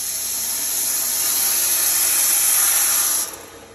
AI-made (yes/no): no